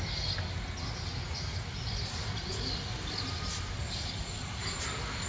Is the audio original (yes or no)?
yes